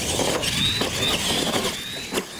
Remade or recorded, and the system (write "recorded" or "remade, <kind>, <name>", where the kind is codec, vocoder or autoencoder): recorded